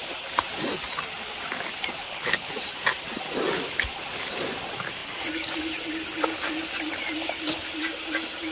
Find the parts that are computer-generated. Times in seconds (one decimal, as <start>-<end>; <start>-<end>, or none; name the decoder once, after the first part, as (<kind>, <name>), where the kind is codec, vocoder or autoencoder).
2.0-2.5 (codec, HILCodec)